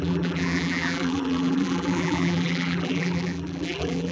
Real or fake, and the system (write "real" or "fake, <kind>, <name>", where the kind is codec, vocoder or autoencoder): fake, vocoder, BigVGAN v2